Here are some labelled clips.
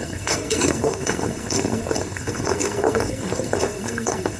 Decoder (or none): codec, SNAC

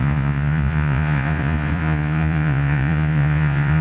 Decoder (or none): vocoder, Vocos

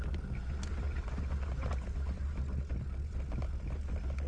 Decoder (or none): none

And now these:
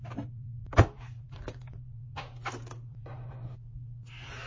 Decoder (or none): vocoder, BigVGAN v2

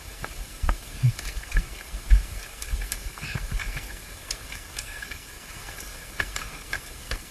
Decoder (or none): codec, SNAC